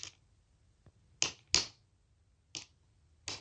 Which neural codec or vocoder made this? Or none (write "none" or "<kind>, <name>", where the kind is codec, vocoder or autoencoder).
none